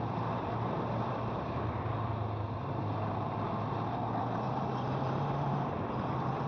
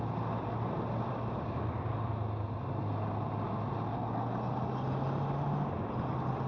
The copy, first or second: first